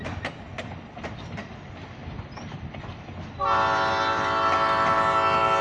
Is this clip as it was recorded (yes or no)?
yes